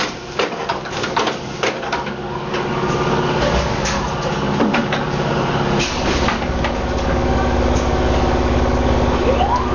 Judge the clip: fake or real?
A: fake